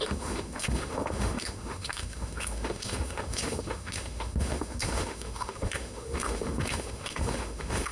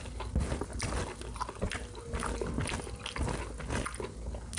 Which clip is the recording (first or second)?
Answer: second